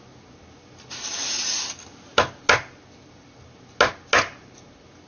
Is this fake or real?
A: real